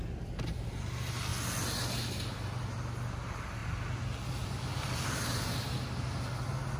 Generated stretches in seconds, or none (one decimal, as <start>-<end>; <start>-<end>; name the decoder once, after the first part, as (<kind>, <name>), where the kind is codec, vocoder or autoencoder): none